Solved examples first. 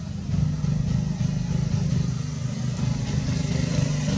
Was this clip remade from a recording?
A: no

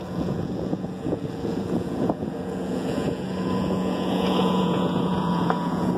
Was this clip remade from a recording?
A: yes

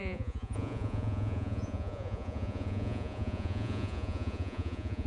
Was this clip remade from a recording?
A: yes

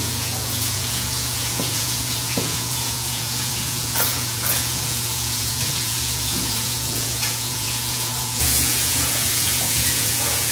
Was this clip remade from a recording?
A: yes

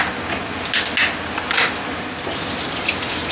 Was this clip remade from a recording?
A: no